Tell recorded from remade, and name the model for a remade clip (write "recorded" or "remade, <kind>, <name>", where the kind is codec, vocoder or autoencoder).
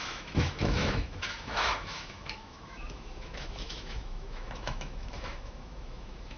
remade, autoencoder, DAC-VAE